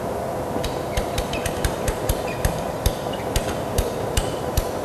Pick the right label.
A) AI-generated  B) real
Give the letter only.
A